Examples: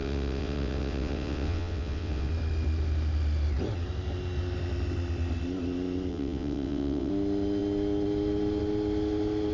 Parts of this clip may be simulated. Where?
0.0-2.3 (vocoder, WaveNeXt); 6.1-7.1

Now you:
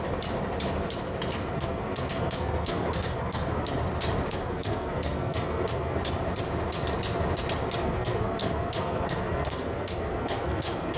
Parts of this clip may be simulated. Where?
1.3-3.7 (codec, SNAC); 4.3-6.0; 7.8-11.0

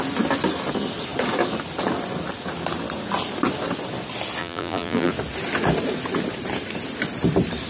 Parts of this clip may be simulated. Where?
4.4-5.1 (vocoder, BigVGAN v2)

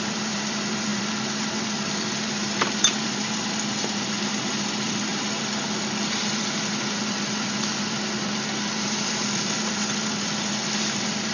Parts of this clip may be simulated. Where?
0.0-5.1 (vocoder, BigVGAN v2); 6.2-11.3

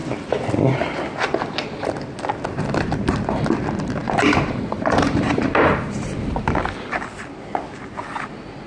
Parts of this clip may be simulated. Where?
4.0-7.1 (vocoder, BigVGAN v2)

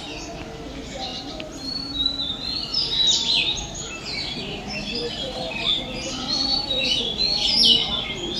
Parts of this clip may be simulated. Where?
1.1-2.3 (vocoder, BigVGAN v2); 2.7-5.6; 6.5-7.1

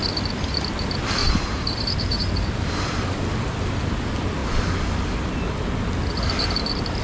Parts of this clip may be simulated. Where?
1.2-2.7 (vocoder, BigVGAN v2)